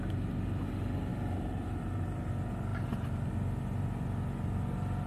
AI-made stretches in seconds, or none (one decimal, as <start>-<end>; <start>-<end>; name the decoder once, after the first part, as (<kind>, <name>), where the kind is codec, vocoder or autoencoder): 1.1-1.8 (vocoder, BigVGAN v2); 2.7-3.3